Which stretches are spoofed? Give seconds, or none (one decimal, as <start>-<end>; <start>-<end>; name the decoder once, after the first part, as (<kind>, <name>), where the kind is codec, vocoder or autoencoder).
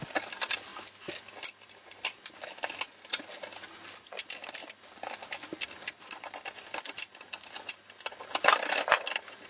none